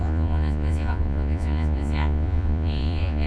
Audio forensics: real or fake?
fake